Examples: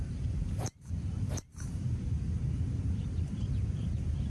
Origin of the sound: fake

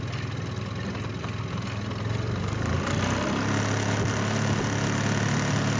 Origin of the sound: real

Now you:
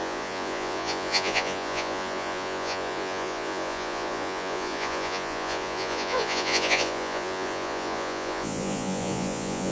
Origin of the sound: fake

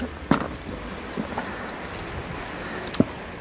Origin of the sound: real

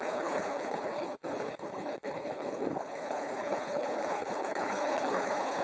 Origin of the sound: fake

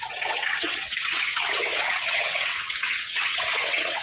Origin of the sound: fake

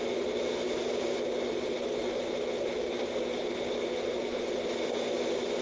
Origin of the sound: real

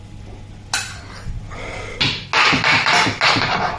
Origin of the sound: real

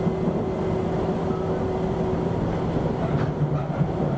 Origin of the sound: real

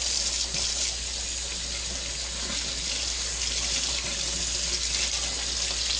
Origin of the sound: real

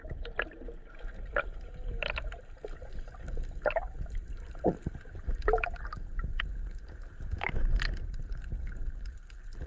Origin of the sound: real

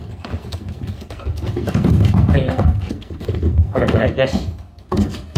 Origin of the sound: fake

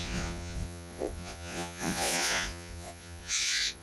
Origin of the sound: fake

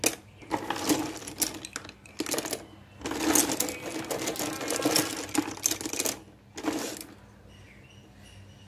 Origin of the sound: real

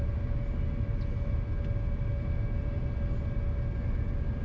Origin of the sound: real